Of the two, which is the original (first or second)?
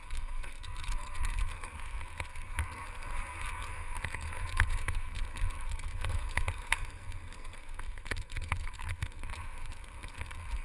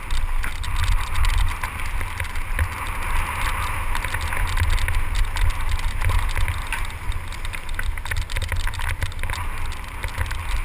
second